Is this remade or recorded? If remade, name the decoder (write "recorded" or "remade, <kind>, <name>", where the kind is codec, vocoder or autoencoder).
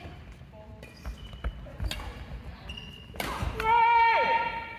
recorded